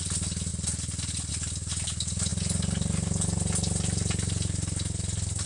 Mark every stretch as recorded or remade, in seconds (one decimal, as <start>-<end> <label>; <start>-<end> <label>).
0.0-5.5 recorded